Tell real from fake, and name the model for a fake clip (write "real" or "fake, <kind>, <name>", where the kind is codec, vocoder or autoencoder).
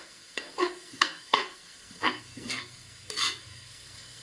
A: fake, codec, SNAC